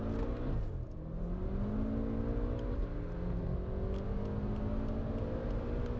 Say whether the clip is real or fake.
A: real